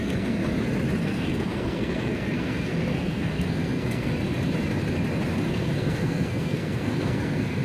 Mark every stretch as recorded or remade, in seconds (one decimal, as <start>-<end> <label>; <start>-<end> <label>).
0.0-0.4 remade; 0.4-1.0 recorded; 1.0-4.1 remade; 4.1-5.5 recorded; 5.5-7.6 remade